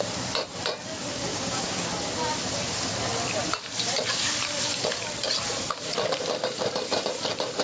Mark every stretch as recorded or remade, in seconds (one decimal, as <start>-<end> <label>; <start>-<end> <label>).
0.0-1.3 recorded; 1.3-1.9 remade; 1.9-7.6 recorded